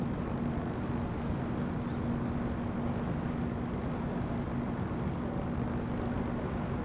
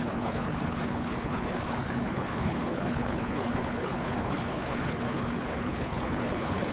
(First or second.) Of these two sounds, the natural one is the first